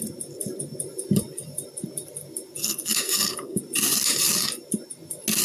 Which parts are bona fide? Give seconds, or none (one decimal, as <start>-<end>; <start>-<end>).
0.0-2.6; 3.6-5.4